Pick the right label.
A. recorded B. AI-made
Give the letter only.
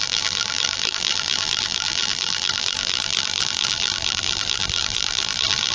B